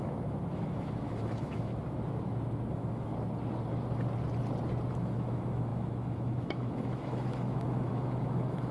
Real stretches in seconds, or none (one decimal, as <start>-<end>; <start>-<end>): 1.7-2.7; 3.1-4.9